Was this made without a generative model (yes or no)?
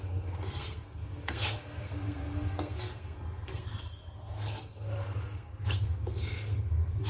no